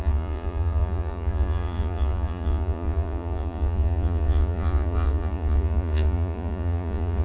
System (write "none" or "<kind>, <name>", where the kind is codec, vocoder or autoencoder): vocoder, Vocos